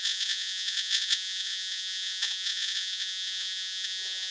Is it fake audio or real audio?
fake